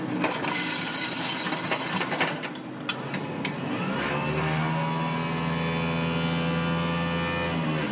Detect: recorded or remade recorded